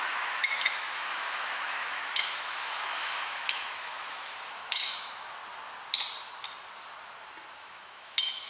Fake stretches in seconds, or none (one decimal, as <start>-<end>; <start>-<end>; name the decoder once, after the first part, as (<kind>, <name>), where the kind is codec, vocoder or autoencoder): 0.0-5.4 (autoencoder, DAC-VAE); 7.5-8.5